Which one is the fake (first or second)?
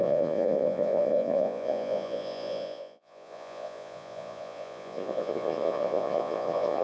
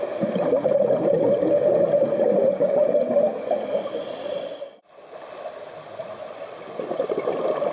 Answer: first